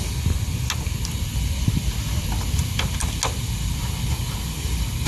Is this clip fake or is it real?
real